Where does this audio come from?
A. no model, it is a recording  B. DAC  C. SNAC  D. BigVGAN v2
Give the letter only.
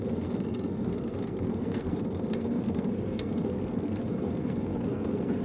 C